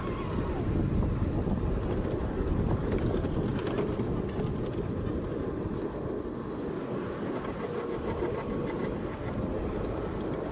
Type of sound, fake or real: real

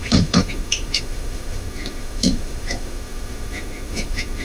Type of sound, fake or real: fake